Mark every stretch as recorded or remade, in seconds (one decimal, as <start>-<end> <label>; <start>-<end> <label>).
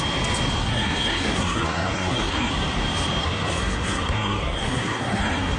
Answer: 0.0-0.6 recorded; 0.6-2.5 remade; 2.5-3.2 recorded; 3.2-5.6 remade